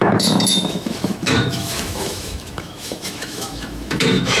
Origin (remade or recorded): remade